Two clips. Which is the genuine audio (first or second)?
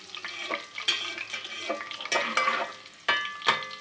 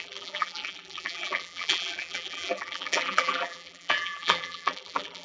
first